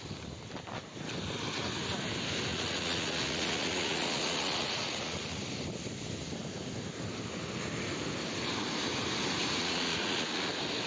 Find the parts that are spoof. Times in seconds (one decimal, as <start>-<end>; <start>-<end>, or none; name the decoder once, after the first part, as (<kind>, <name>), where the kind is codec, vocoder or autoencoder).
2.5-5.4 (vocoder, Vocos); 9.6-10.5